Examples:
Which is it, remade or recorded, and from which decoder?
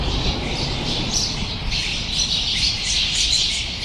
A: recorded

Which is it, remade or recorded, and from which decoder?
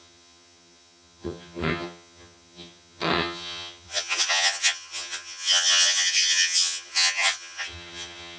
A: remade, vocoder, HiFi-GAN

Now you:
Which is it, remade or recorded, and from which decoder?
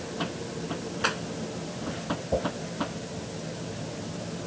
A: recorded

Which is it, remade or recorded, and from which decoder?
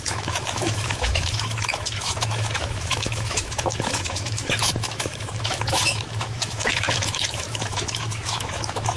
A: remade, autoencoder, DAC-VAE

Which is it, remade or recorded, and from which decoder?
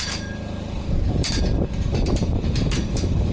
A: remade, vocoder, BigVGAN v2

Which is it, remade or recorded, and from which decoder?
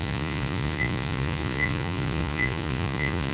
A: remade, vocoder, Vocos